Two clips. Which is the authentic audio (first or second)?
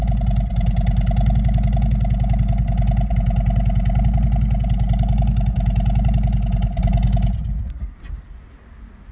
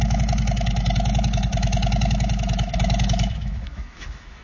first